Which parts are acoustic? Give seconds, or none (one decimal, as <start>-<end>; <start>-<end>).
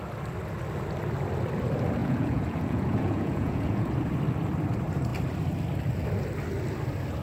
0.0-2.0; 3.9-7.2